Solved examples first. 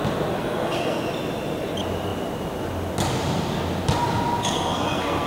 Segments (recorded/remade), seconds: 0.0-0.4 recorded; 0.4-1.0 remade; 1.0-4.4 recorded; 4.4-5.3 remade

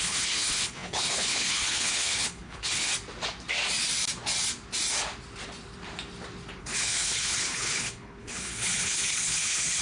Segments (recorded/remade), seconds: 0.0-2.9 remade; 2.9-6.6 recorded; 6.6-9.8 remade